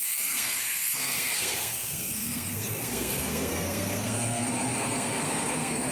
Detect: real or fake fake